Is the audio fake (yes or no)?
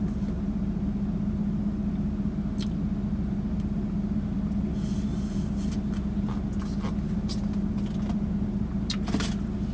no